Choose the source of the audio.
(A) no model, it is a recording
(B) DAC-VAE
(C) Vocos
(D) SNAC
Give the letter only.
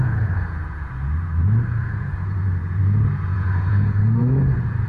C